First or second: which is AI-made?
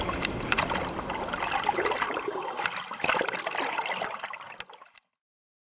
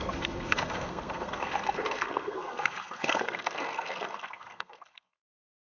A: second